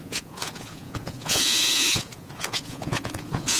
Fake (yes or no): yes